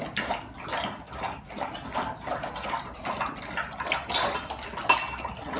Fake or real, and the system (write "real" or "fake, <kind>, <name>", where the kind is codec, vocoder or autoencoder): real